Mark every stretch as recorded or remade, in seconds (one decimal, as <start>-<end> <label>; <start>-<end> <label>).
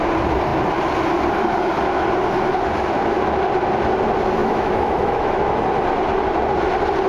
0.0-4.4 recorded; 4.4-5.6 remade; 5.6-7.1 recorded